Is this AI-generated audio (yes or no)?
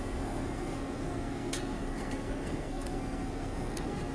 yes